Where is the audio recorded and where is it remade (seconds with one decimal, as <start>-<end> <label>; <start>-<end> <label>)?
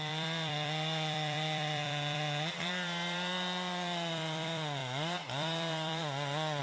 0.0-6.6 remade